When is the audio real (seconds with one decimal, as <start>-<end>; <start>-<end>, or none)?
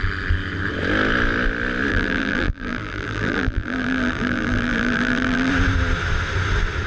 0.0-1.9; 5.5-6.9